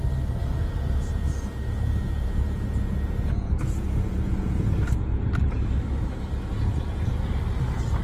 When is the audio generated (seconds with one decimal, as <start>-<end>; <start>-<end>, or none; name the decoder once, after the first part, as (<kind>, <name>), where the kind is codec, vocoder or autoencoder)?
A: 0.4-5.2 (vocoder, Vocos); 6.5-7.3